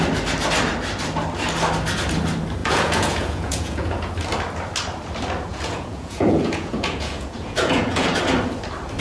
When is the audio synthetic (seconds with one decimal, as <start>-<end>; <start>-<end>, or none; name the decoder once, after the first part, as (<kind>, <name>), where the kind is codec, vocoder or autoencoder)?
2.6-4.1 (vocoder, Vocos); 5.5-8.1

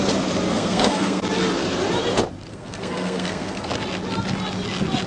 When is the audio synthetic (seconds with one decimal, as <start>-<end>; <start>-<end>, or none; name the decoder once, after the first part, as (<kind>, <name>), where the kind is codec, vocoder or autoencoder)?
0.5-1.2 (codec, SNAC); 2.5-3.7

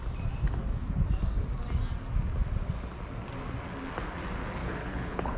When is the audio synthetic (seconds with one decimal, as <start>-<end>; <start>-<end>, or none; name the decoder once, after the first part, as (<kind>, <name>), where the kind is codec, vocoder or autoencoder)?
4.6-5.4 (codec, HILCodec)